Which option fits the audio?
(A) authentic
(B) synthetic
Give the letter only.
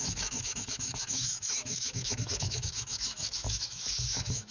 B